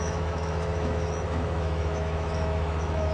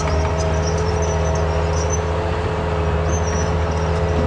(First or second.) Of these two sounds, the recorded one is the second